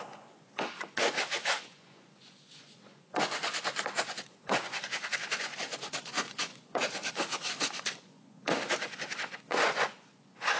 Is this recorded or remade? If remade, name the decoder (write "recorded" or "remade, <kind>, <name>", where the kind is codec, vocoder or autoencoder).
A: remade, vocoder, Vocos